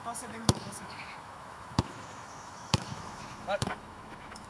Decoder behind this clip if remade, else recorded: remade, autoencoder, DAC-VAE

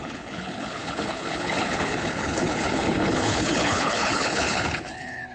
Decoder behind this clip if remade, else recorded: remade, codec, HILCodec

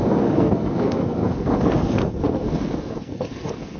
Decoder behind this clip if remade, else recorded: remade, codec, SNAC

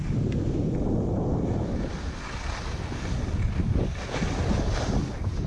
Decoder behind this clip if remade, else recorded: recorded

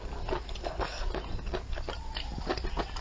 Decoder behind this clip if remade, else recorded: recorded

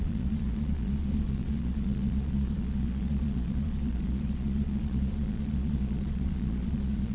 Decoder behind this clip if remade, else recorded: remade, vocoder, Vocos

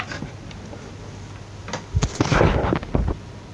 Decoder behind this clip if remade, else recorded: recorded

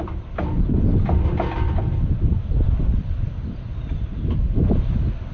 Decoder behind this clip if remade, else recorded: recorded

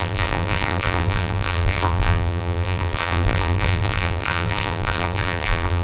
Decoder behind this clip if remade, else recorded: remade, vocoder, BigVGAN v2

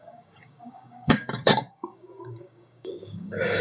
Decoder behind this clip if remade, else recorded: remade, codec, DAC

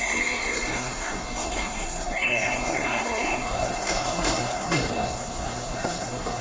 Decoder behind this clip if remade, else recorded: remade, codec, SNAC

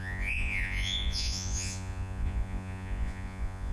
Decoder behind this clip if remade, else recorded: remade, vocoder, Vocos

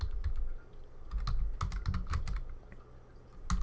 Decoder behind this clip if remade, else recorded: recorded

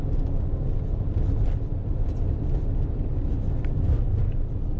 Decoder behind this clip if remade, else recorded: recorded